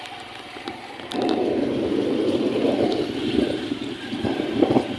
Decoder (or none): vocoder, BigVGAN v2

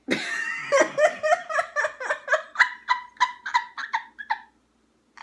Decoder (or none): none